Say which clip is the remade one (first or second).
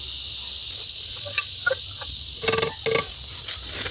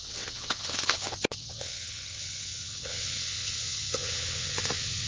second